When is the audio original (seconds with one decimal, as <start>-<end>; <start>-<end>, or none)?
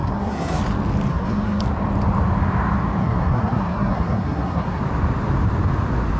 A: 0.6-1.1; 1.6-3.0; 4.8-6.2